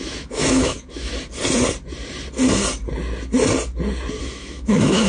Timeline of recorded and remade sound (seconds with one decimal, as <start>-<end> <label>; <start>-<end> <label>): 0.0-1.1 remade; 1.1-4.2 recorded; 4.2-5.1 remade